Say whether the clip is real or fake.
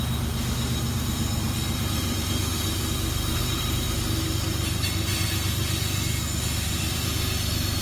real